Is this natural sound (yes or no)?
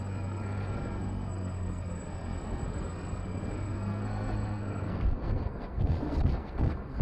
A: no